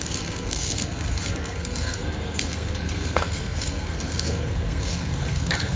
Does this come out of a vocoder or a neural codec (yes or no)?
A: yes